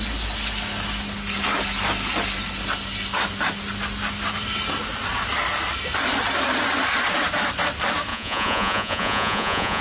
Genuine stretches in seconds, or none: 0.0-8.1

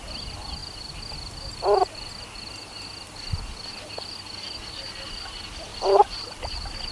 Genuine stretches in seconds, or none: 0.0-5.7

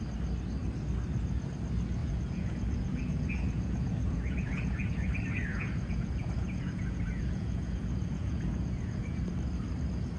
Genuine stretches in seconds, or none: 0.0-2.0; 4.9-5.5; 9.2-10.2